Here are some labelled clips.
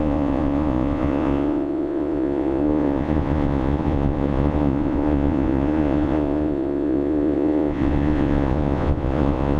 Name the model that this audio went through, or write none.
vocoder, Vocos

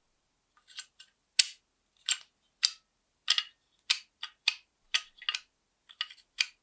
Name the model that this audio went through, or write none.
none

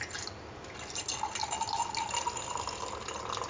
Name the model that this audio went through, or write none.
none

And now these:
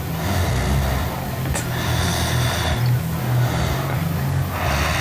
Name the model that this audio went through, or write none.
none